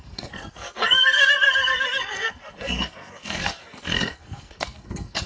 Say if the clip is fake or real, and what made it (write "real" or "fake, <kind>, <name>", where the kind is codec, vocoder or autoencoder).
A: fake, codec, SNAC